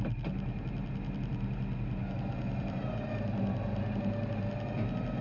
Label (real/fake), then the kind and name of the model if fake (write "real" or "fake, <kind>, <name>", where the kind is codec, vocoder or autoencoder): real